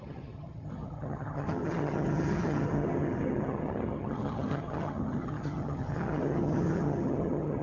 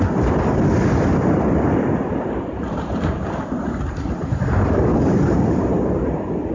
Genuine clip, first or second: second